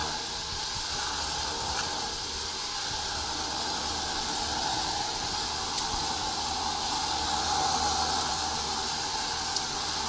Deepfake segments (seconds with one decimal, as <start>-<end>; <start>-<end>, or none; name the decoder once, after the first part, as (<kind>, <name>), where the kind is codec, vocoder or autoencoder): none